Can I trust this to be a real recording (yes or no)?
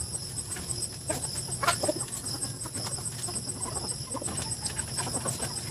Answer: yes